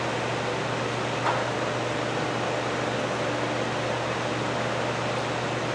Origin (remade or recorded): recorded